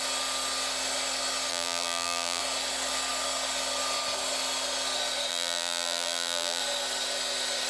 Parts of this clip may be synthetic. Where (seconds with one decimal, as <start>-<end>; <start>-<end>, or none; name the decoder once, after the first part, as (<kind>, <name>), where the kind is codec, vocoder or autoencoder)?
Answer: 1.5-2.4 (vocoder, BigVGAN v2); 5.3-6.6